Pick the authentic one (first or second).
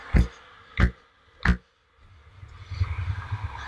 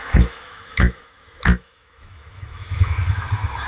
first